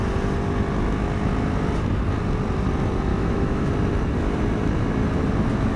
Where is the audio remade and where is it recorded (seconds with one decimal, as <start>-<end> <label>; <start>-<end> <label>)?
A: 0.0-3.1 recorded; 3.1-3.7 remade; 3.7-5.8 recorded